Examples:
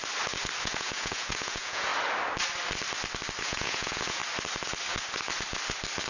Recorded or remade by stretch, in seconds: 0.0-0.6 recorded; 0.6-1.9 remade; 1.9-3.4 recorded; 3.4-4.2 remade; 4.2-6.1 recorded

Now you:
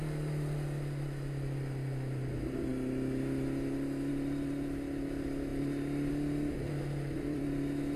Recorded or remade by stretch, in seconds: 0.0-8.0 recorded